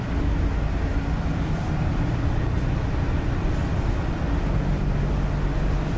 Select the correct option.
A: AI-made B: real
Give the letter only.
B